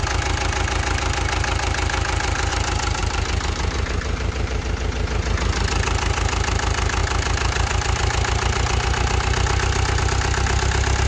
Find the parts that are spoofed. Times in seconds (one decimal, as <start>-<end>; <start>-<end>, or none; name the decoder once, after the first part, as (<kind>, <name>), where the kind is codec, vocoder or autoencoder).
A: 3.0-4.6 (vocoder, BigVGAN v2)